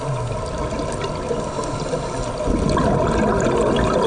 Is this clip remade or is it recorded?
recorded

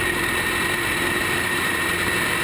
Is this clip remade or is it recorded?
remade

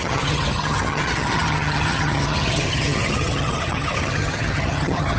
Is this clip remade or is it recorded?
remade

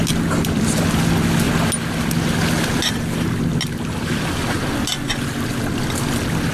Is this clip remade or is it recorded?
recorded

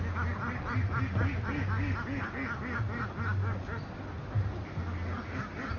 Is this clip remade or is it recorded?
recorded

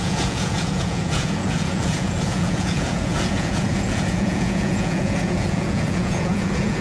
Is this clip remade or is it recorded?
remade